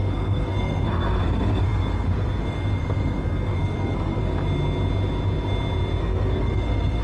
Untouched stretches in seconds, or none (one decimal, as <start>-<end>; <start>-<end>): 4.2-6.0